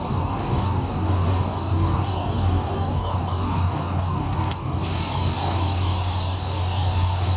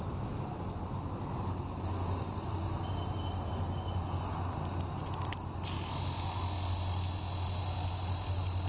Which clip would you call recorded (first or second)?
second